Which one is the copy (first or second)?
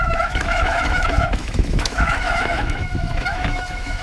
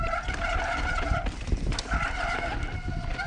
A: first